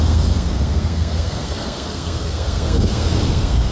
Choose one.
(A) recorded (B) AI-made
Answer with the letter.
B